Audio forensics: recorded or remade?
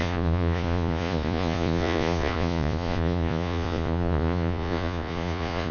remade